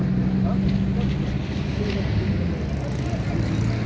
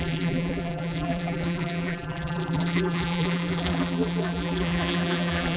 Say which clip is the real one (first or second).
first